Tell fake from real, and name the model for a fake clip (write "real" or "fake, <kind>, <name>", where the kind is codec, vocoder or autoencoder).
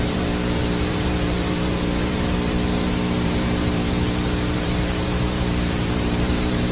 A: fake, vocoder, BigVGAN v2